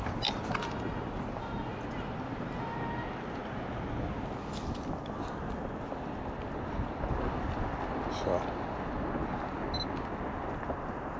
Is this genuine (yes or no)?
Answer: yes